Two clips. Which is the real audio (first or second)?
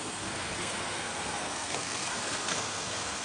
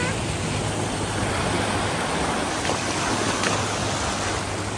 second